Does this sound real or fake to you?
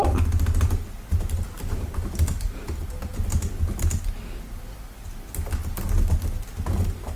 real